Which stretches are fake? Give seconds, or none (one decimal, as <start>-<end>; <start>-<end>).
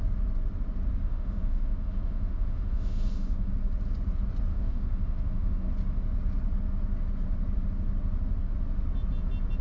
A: 1.0-3.5; 4.5-5.7